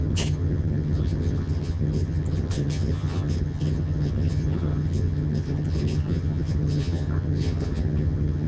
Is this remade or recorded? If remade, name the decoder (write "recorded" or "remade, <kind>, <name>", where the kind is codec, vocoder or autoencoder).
remade, vocoder, HiFi-GAN